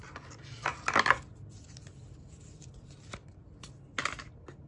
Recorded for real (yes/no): yes